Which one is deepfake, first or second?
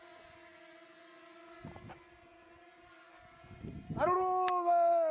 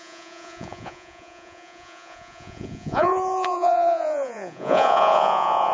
second